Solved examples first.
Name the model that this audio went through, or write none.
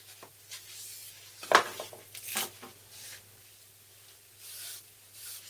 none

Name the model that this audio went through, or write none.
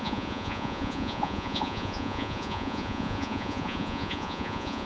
vocoder, Vocos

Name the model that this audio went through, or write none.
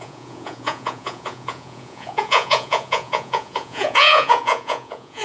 vocoder, Vocos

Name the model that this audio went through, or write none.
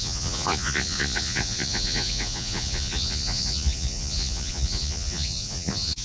vocoder, Vocos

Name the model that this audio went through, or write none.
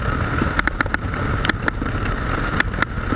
none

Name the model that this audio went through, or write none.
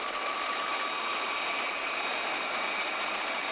none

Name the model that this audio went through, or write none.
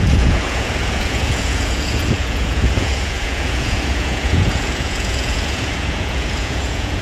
vocoder, Vocos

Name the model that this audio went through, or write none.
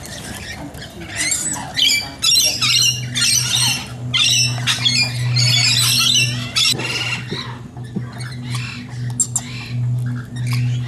none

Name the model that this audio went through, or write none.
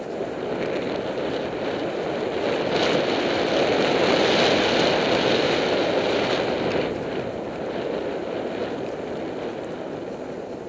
none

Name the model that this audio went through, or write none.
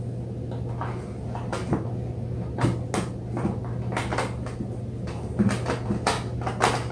none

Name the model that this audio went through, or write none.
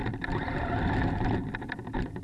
none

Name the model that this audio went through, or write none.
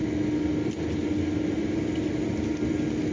none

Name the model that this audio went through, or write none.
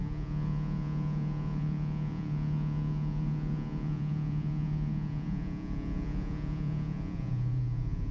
vocoder, Vocos